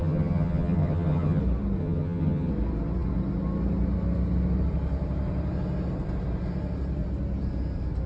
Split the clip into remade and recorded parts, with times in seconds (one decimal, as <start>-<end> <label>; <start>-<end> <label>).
0.0-1.4 remade; 1.4-1.8 recorded; 1.8-2.5 remade; 2.5-8.1 recorded